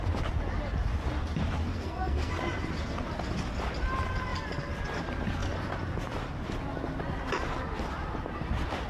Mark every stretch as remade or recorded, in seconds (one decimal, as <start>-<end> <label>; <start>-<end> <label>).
0.0-1.7 recorded; 1.7-2.4 remade; 2.4-8.9 recorded